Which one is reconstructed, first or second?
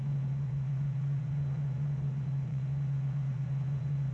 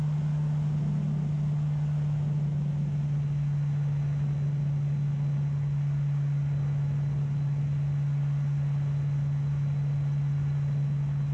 first